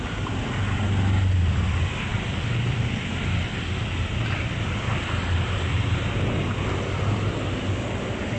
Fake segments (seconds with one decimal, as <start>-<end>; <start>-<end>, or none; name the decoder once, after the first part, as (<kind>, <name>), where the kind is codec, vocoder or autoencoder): none